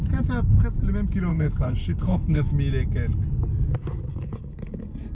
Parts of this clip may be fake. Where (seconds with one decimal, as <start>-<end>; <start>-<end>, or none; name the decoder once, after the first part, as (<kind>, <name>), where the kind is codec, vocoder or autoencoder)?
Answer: 1.3-2.5 (codec, HILCodec)